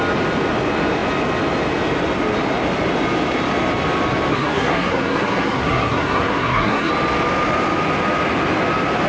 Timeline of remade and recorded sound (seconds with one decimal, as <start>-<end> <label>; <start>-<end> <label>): 0.0-4.3 recorded; 4.3-6.9 remade; 6.9-9.1 recorded